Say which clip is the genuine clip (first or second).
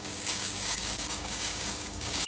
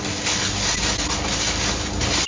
second